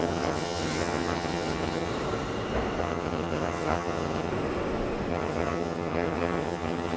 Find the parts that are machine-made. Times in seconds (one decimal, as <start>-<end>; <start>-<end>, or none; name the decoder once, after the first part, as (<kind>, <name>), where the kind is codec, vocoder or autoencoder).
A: 0.0-1.9 (vocoder, HiFi-GAN); 2.8-4.3; 5.1-7.0